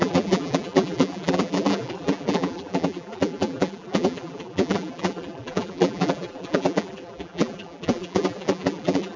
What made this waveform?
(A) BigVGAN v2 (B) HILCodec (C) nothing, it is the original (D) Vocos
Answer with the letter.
A